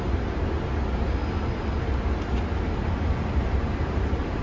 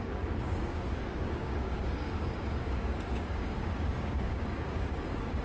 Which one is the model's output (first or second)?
second